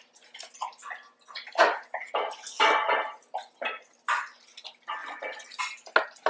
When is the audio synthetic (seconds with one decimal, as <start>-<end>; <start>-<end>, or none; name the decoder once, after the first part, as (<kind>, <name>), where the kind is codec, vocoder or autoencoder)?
none